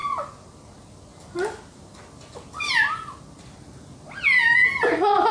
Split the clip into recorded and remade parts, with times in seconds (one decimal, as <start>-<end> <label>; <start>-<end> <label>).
0.0-5.3 recorded